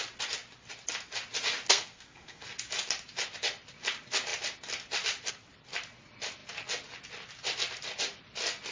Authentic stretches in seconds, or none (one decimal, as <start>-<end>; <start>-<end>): 0.0-1.7; 2.5-8.7